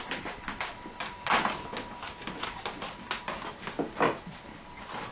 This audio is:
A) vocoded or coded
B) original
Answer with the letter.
B